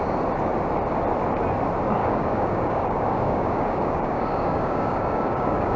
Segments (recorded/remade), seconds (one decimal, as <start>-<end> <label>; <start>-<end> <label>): 0.0-2.0 recorded; 2.0-5.8 remade